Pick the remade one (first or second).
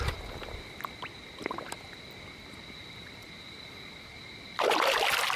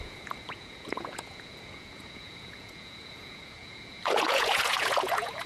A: second